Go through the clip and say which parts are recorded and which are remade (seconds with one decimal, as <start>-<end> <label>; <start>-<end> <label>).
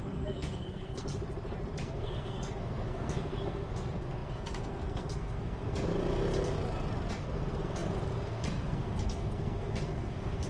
0.0-1.1 remade; 1.1-1.8 recorded; 1.8-5.9 remade; 5.9-7.1 recorded; 7.1-10.5 remade